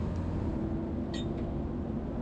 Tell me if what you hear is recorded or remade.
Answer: recorded